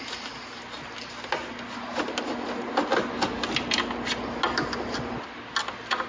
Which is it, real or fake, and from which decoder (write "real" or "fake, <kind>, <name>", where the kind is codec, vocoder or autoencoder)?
real